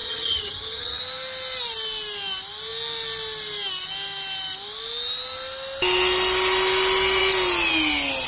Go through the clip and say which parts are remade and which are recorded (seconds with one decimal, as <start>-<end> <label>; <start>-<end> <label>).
0.0-1.0 remade; 1.0-8.3 recorded